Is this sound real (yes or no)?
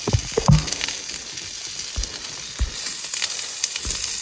yes